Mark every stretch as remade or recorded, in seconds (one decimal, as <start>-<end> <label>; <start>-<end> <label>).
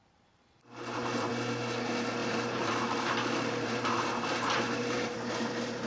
0.0-1.3 remade; 1.3-2.2 recorded; 2.2-5.3 remade; 5.3-5.9 recorded